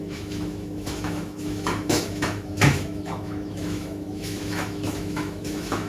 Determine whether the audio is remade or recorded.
remade